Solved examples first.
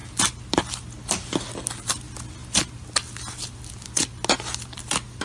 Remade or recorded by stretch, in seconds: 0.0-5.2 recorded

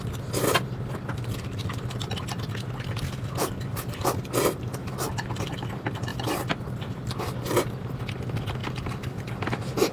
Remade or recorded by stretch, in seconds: 0.0-9.9 recorded

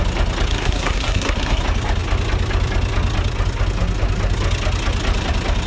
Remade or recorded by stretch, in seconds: 0.0-0.5 recorded; 0.5-1.6 remade; 1.6-5.7 recorded

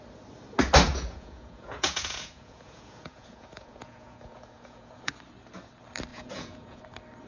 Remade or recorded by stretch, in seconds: 0.0-0.9 recorded; 0.9-5.1 remade; 5.1-6.1 recorded; 6.1-6.8 remade; 6.8-7.3 recorded

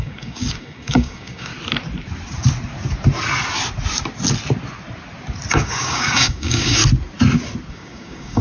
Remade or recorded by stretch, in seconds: 0.0-1.5 remade; 1.5-5.5 recorded; 5.5-6.8 remade; 6.8-7.7 recorded; 7.7-8.4 remade

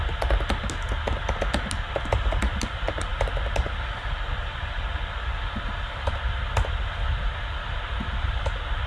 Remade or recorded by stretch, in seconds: 0.0-8.9 recorded

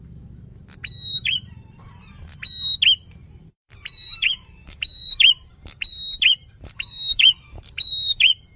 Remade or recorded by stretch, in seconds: 0.0-1.1 recorded; 1.1-2.1 remade; 2.1-3.2 recorded; 3.2-8.6 remade